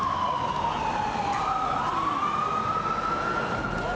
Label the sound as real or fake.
real